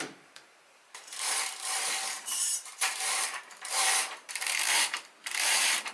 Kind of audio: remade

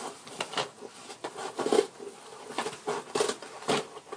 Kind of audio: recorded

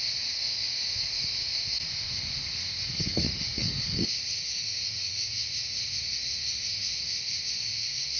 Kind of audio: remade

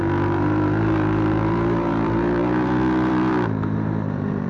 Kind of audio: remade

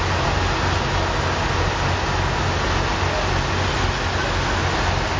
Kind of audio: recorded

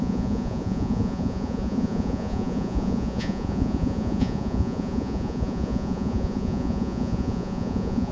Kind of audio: remade